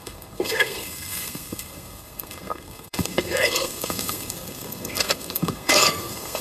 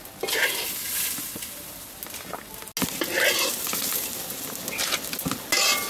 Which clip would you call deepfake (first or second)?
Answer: first